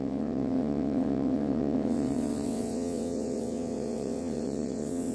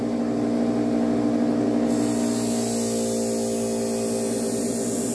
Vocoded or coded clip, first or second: first